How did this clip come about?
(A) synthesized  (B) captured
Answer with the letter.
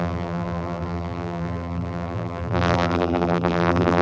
A